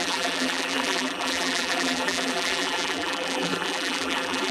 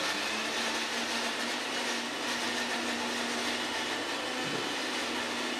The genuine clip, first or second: second